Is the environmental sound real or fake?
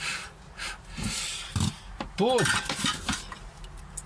real